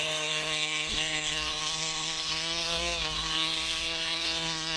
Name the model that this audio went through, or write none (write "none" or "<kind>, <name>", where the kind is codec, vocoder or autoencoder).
codec, SNAC